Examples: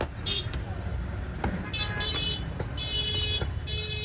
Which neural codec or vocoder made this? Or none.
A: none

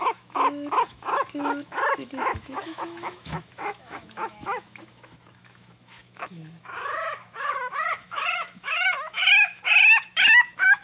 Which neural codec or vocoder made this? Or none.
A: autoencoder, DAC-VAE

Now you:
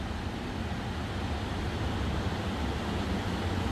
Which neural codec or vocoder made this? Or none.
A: none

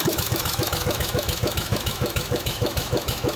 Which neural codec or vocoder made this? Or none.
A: autoencoder, DAC-VAE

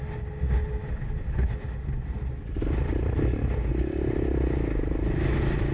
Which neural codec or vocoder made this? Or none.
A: none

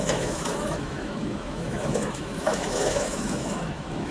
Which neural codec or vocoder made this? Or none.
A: autoencoder, DAC-VAE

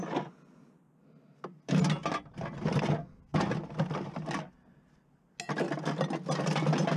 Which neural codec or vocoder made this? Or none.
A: none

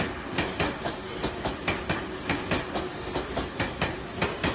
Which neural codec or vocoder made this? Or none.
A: none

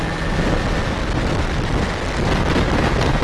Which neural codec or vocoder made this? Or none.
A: none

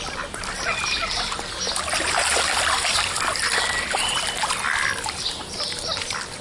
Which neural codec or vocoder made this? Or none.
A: none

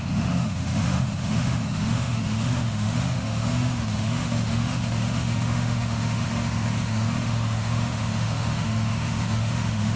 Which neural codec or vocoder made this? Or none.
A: autoencoder, DAC-VAE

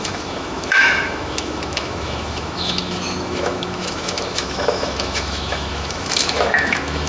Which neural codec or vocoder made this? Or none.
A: autoencoder, DAC-VAE